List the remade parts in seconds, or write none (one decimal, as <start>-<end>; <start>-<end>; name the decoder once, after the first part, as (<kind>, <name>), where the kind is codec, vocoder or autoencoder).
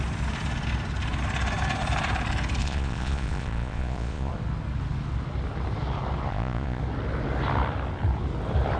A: 2.6-4.3 (vocoder, Vocos); 6.3-6.8